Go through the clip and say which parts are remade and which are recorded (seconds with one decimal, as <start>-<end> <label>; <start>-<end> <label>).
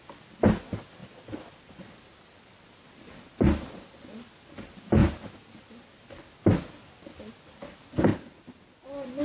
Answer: 0.0-9.2 recorded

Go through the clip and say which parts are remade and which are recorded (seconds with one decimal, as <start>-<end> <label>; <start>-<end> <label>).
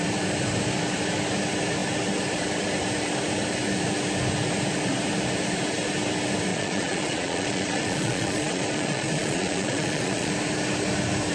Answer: 0.0-6.5 recorded; 6.5-10.3 remade; 10.3-11.3 recorded